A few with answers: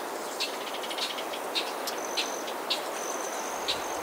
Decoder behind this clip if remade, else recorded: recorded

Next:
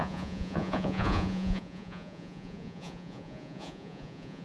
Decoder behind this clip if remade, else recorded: remade, vocoder, Vocos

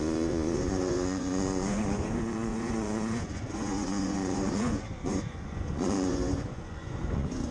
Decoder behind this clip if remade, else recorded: remade, vocoder, Vocos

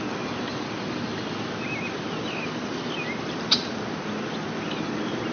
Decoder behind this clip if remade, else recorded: recorded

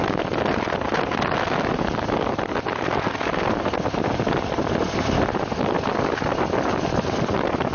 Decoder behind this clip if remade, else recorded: recorded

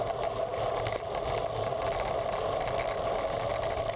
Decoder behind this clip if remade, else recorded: recorded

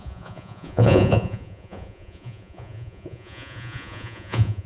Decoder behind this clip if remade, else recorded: remade, vocoder, Vocos